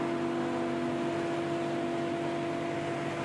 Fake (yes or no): no